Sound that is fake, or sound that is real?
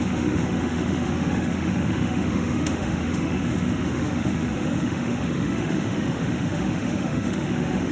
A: fake